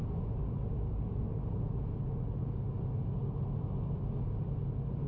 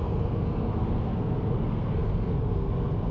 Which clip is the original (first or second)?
first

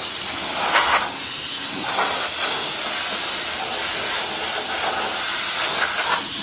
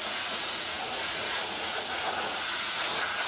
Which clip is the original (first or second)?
first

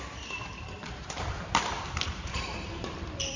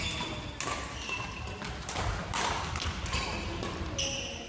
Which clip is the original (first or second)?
second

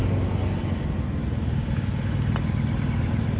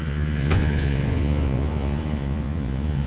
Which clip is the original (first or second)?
first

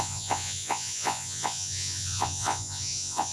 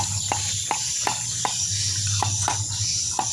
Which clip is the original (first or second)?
second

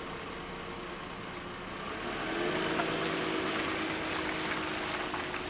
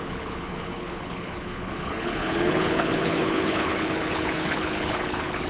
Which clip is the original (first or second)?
first